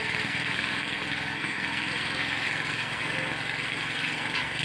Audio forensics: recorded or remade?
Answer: remade